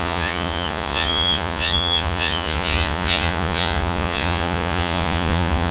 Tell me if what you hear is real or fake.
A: fake